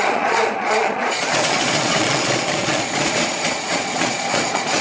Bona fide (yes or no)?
no